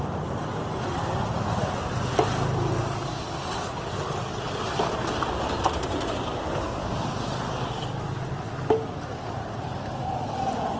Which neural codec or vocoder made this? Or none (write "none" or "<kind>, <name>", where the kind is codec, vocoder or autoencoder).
none